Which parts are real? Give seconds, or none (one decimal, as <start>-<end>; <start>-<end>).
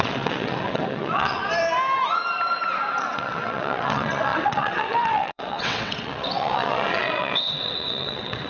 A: 1.4-3.0